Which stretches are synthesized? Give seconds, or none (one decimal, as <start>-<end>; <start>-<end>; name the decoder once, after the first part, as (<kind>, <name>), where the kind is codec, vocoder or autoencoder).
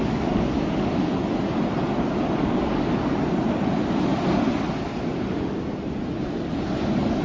0.0-1.1 (codec, DAC); 2.4-2.9